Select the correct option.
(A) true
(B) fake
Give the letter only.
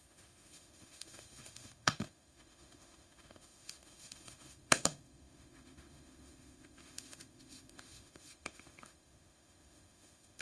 B